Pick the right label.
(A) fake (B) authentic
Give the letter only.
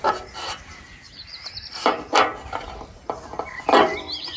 B